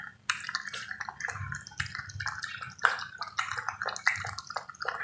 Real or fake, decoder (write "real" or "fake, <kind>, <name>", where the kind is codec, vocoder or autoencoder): real